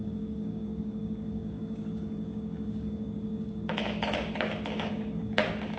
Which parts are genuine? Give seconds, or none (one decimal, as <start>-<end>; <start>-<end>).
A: none